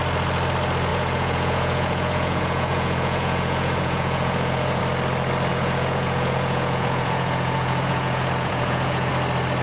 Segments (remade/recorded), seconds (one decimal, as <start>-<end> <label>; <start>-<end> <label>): 0.0-0.9 recorded; 0.9-4.8 remade; 4.8-5.5 recorded; 5.5-9.1 remade; 9.1-9.6 recorded